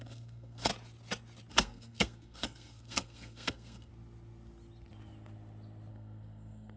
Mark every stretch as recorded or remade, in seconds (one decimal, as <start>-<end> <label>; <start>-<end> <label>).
0.0-0.7 remade; 0.7-1.5 recorded; 1.5-3.9 remade; 3.9-5.9 recorded; 5.9-6.8 remade